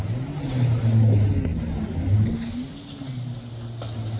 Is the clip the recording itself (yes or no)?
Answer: yes